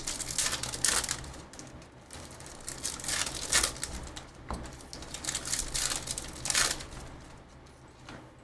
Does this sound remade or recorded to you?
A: recorded